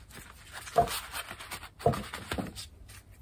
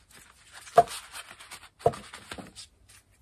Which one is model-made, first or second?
first